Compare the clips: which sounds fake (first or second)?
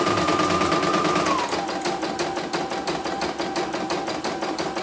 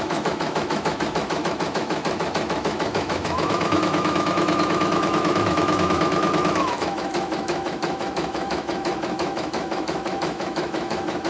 second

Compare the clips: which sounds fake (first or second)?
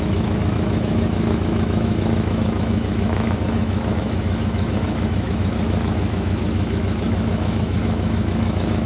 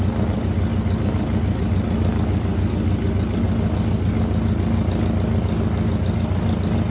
first